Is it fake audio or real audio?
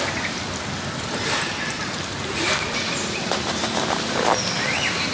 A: real